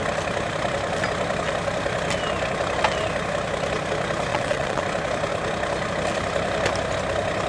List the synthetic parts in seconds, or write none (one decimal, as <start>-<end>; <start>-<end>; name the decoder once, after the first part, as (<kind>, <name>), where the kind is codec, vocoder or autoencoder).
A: 4.3-4.8 (vocoder, WaveNeXt)